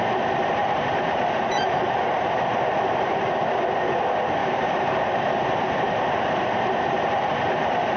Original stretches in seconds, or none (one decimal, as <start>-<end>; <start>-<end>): 0.0-0.6; 3.2-4.4

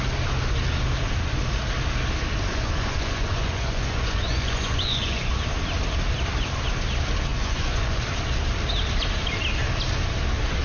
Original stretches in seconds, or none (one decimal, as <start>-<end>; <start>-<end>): 0.0-2.5; 5.3-7.3; 8.0-10.6

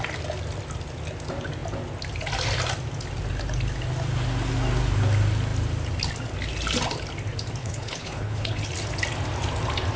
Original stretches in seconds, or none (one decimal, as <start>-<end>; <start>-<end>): 0.0-7.6; 8.7-10.0

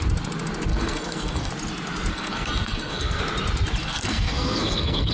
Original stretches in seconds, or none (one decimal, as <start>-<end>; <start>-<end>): 0.0-0.7; 1.5-2.1; 3.2-3.8